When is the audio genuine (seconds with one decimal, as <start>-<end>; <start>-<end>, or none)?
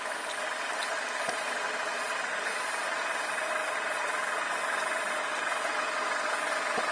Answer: 0.0-6.9